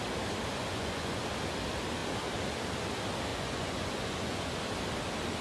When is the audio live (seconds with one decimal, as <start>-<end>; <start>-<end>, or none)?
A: 0.0-0.5; 1.2-3.3; 4.5-5.4

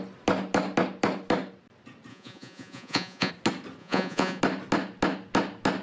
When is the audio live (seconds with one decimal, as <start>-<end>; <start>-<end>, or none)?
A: 0.0-2.1; 3.3-3.8; 4.4-5.8